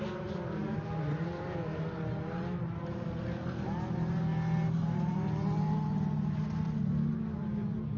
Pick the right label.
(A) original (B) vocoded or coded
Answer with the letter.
A